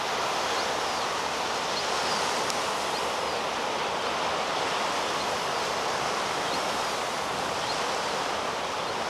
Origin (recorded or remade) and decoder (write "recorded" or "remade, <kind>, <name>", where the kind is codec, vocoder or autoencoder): recorded